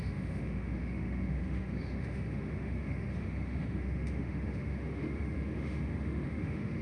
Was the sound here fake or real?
fake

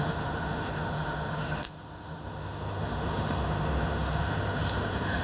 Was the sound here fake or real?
fake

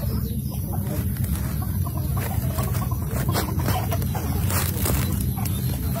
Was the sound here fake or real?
real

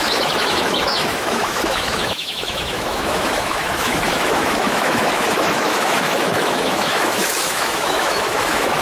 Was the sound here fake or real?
fake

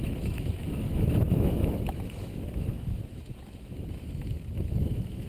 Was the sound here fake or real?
fake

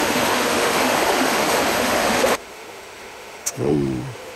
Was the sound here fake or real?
fake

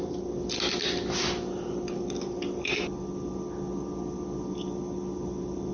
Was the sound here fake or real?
real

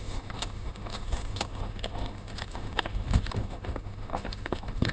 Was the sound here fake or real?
fake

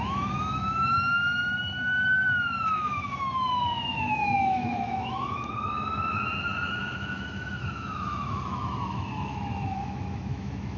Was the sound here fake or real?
fake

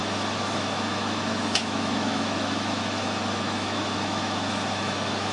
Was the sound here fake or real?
fake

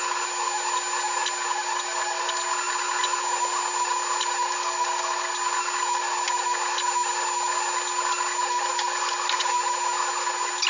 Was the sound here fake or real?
real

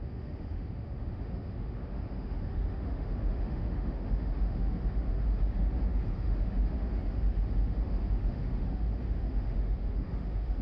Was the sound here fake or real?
fake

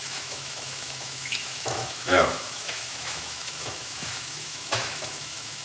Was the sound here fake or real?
fake